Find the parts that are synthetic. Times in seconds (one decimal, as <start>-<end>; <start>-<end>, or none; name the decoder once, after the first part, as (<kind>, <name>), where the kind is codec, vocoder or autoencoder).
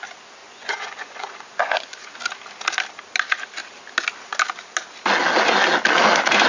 0.4-2.2 (vocoder, Vocos)